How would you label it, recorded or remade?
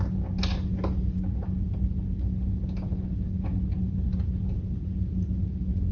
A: recorded